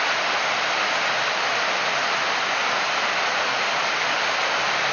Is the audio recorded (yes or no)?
yes